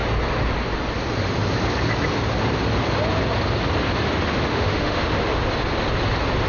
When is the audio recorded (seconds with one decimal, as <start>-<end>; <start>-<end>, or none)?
0.0-4.5; 5.0-6.5